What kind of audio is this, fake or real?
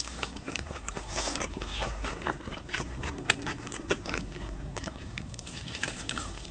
fake